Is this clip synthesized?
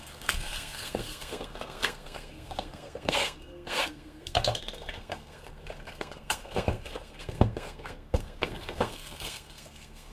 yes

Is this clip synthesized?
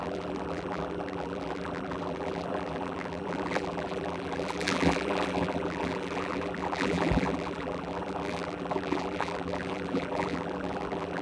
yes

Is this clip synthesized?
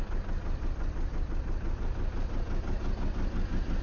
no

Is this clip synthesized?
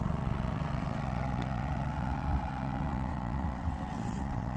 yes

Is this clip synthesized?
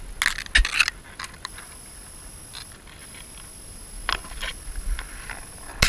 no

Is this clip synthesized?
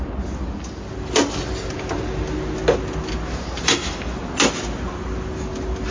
no